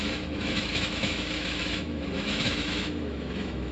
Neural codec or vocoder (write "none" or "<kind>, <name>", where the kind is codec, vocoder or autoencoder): autoencoder, DAC-VAE